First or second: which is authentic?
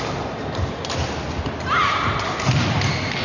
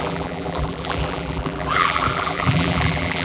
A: first